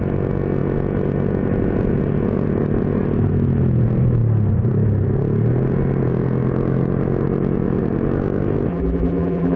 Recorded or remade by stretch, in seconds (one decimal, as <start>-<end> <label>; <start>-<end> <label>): 0.0-8.7 recorded; 8.7-9.6 remade